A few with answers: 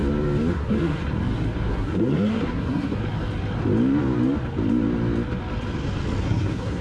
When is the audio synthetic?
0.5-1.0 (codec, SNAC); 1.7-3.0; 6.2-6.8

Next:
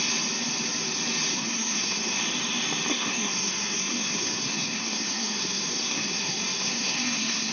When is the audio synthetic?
1.3-2.2 (codec, SNAC); 2.9-7.5

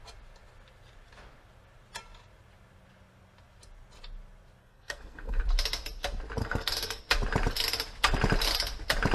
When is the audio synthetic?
4.6-5.4 (codec, SNAC); 6.4-7.0

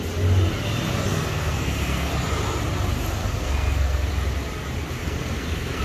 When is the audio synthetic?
1.1-2.1 (codec, SNAC); 3.2-4.1; 5.0-5.8